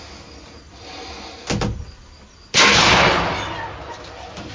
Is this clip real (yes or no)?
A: yes